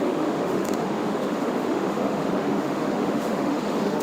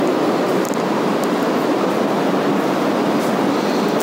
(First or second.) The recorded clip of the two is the second